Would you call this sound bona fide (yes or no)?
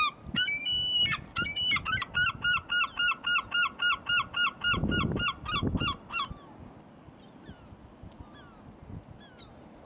yes